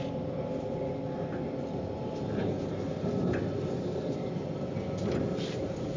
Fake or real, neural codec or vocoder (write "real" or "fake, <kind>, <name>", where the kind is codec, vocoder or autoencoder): real